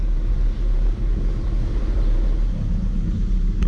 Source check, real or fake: real